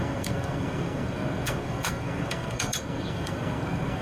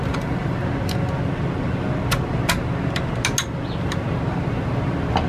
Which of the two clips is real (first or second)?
second